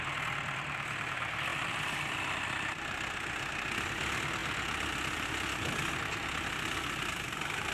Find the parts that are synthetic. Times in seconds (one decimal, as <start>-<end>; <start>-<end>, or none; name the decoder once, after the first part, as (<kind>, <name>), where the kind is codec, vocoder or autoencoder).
none